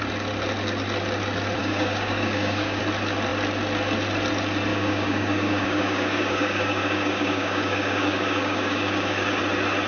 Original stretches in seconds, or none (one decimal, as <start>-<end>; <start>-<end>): 0.0-1.6; 2.8-4.7; 9.4-9.9